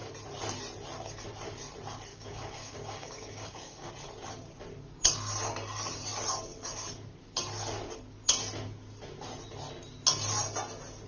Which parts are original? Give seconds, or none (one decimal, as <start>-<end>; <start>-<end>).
0.0-2.1; 3.9-11.1